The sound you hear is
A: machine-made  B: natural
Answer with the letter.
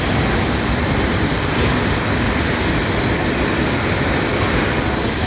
B